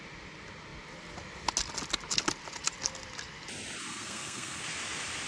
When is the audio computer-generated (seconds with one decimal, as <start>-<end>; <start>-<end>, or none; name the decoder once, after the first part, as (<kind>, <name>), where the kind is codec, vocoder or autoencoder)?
3.9-4.6 (codec, SNAC)